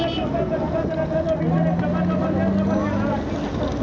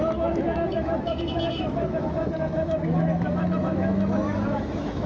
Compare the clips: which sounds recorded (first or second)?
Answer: first